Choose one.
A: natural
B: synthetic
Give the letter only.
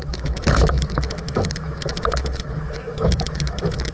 B